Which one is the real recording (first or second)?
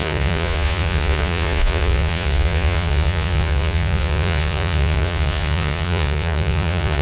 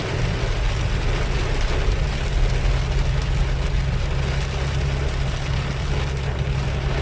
second